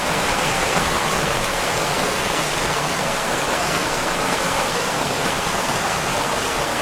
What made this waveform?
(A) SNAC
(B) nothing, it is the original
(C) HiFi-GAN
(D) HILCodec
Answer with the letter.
A